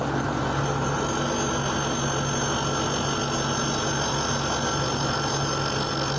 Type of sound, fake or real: real